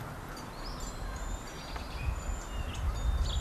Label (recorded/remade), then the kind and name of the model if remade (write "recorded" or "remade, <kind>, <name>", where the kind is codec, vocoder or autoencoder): recorded